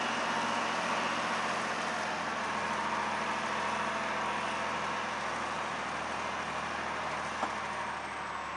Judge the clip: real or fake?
real